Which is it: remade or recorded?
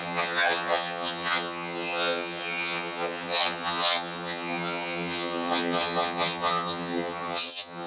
remade